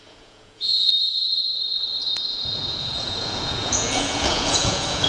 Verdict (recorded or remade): remade